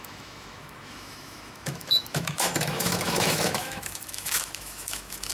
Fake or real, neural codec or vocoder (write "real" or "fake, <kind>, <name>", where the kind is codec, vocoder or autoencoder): fake, autoencoder, DAC-VAE